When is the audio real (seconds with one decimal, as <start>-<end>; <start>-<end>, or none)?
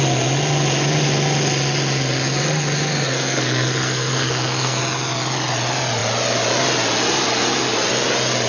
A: 0.0-2.9; 4.8-8.5